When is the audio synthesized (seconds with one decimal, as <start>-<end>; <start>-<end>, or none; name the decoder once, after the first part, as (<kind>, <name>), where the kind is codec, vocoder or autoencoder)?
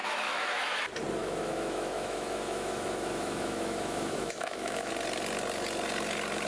0.0-0.6 (autoencoder, DAC-VAE); 1.2-4.9